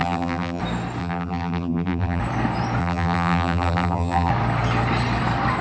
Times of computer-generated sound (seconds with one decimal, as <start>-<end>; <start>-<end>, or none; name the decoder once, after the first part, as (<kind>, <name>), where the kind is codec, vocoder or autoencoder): 0.0-0.6 (vocoder, BigVGAN v2); 1.0-2.2; 2.8-4.3